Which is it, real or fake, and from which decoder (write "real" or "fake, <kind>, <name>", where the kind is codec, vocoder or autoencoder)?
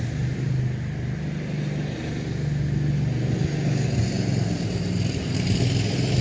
real